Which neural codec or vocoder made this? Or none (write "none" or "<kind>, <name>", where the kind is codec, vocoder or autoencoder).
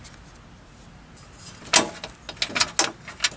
none